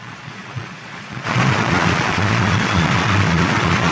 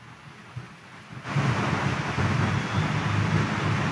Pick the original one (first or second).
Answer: second